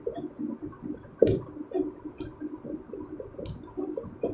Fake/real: real